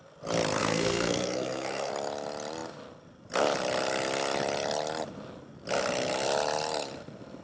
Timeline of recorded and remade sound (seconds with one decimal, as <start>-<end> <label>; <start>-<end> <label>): 0.0-0.6 recorded; 0.6-1.9 remade; 1.9-7.4 recorded